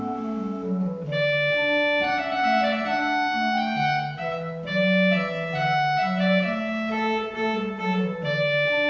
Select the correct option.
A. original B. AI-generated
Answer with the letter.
A